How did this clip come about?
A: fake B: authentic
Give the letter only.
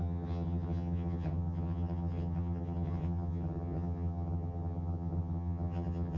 A